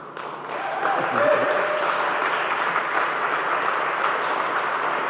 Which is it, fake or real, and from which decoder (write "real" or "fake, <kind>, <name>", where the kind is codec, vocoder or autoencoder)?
real